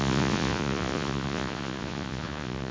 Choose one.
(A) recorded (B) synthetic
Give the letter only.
B